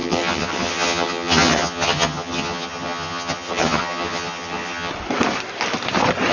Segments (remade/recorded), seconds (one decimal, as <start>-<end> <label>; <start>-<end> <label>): 0.0-4.9 remade; 4.9-6.3 recorded

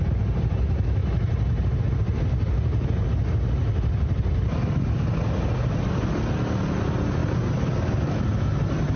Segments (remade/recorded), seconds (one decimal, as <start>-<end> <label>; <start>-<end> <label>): 0.0-9.0 recorded

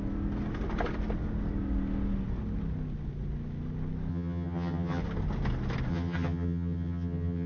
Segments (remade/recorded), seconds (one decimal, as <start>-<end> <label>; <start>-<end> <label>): 0.0-4.1 recorded; 4.1-5.0 remade; 5.0-5.9 recorded; 5.9-7.5 remade

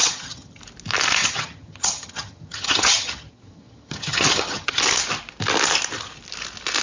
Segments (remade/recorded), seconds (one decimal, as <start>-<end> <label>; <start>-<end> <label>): 0.0-0.6 remade; 0.6-1.2 recorded; 1.2-4.8 remade; 4.8-6.8 recorded

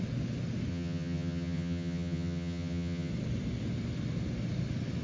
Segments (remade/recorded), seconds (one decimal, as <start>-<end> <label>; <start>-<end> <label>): 0.0-0.7 recorded; 0.7-3.1 remade; 3.1-5.0 recorded

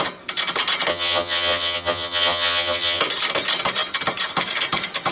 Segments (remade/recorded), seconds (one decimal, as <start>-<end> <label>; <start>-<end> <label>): 0.0-0.9 recorded; 0.9-3.0 remade; 3.0-5.1 recorded

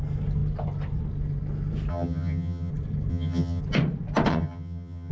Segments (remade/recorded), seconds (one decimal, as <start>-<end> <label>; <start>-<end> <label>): 0.0-1.9 recorded; 1.9-2.7 remade; 2.7-3.1 recorded; 3.1-3.6 remade; 3.6-4.3 recorded; 4.3-5.1 remade